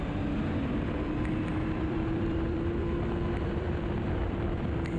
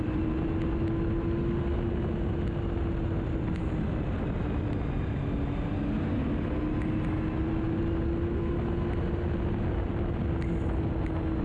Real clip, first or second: second